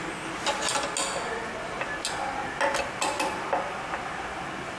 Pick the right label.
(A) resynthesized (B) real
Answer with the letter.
B